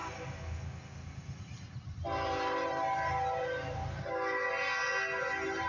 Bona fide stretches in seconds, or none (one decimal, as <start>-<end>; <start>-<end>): 0.0-5.7